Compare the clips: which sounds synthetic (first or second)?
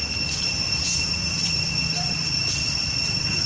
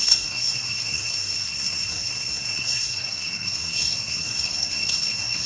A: second